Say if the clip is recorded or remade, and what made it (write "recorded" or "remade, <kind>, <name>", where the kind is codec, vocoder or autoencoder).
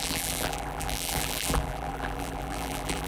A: remade, vocoder, BigVGAN v2